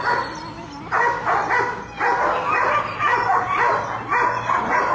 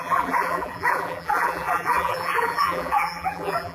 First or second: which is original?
first